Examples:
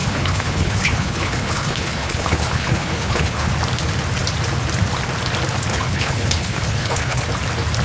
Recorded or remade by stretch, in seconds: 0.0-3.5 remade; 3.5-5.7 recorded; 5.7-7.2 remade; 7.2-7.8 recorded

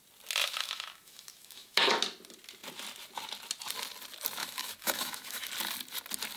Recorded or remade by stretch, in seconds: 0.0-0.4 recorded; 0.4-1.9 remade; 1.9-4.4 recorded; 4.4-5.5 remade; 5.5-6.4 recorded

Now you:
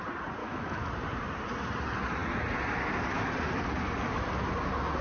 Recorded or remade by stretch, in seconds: 0.0-0.4 recorded; 0.4-0.9 remade; 0.9-5.0 recorded